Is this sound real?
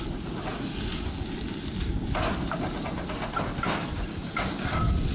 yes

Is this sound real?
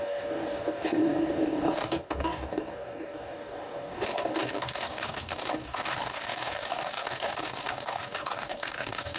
no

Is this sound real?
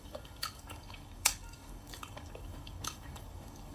no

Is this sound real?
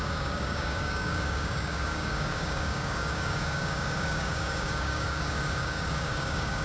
no